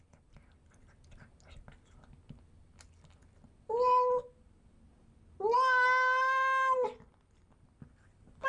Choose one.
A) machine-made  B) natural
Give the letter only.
B